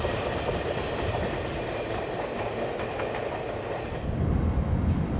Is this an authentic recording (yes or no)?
no